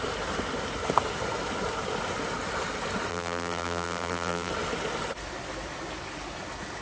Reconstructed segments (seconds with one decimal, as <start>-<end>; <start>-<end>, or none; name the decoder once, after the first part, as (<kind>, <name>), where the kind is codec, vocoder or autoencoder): 3.1-4.5 (vocoder, BigVGAN v2)